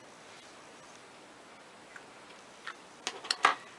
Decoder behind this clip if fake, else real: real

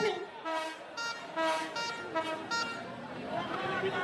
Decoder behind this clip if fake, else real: fake, vocoder, BigVGAN v2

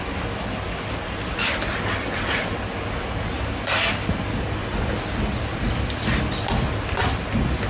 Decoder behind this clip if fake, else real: real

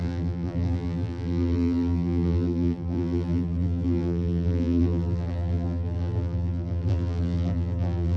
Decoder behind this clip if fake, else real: fake, vocoder, BigVGAN v2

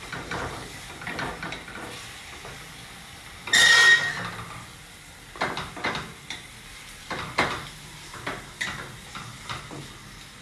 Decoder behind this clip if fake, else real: real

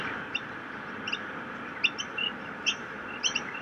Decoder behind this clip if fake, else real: fake, vocoder, BigVGAN v2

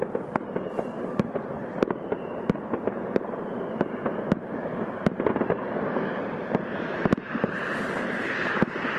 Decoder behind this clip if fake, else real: real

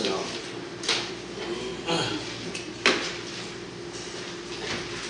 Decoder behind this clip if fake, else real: real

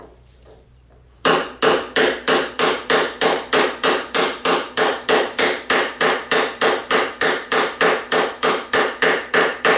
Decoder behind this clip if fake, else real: fake, vocoder, BigVGAN v2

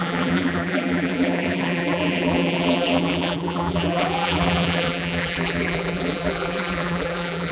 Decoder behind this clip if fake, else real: fake, vocoder, BigVGAN v2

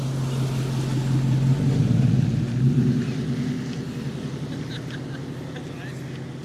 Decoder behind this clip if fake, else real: real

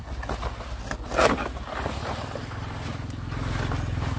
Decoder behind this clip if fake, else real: fake, vocoder, BigVGAN v2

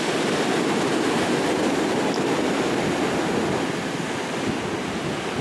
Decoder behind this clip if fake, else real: real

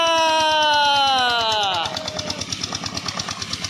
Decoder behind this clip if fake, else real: real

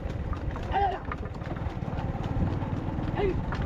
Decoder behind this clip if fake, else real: fake, vocoder, BigVGAN v2